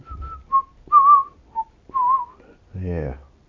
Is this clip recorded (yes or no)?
yes